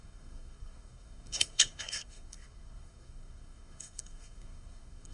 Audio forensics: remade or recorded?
remade